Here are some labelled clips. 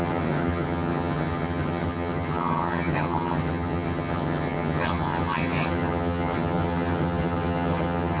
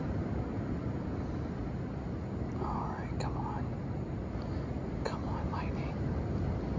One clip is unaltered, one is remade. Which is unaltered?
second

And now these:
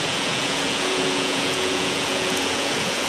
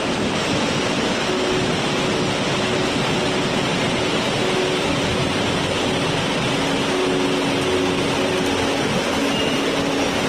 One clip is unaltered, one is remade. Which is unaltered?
second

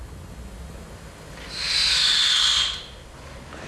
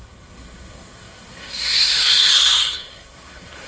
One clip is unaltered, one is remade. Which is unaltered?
first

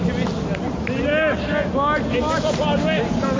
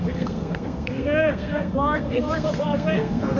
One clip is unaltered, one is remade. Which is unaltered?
first